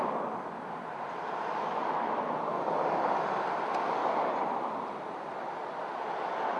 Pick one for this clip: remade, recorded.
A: remade